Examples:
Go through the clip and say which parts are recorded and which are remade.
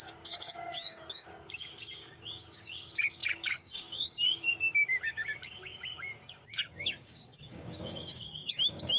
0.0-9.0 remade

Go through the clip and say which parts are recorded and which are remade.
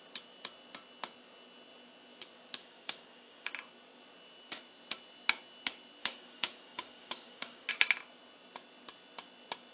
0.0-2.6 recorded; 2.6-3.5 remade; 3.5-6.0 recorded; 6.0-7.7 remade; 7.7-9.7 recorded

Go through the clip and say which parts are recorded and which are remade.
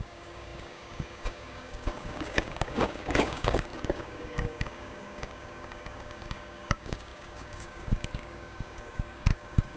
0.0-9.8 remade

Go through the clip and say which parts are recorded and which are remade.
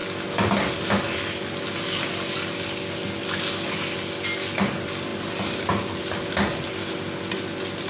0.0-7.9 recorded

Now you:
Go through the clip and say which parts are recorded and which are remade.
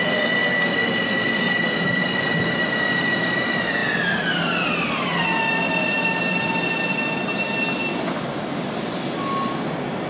0.0-10.1 recorded